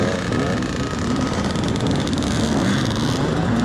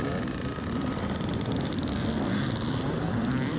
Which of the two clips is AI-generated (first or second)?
second